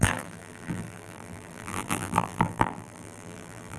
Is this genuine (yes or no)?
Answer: no